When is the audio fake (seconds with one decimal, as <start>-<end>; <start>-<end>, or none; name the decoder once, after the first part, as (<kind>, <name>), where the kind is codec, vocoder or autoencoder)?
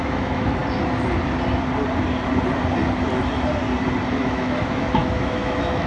0.0-0.6 (autoencoder, DAC-VAE); 4.1-5.9